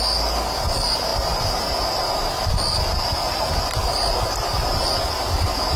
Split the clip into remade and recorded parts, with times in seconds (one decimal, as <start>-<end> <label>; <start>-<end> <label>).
0.0-5.8 recorded